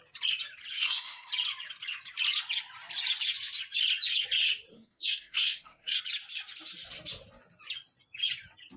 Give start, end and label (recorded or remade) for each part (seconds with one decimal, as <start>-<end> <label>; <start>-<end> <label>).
0.0-0.7 recorded; 0.7-1.3 remade; 1.3-4.7 recorded; 4.7-6.0 remade; 6.0-8.8 recorded